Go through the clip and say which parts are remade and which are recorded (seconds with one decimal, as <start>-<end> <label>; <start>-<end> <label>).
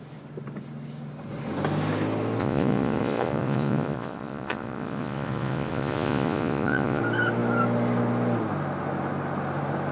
0.0-2.4 recorded; 2.4-7.0 remade; 7.0-9.9 recorded